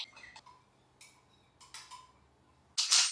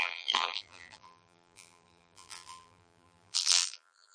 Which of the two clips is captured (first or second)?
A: first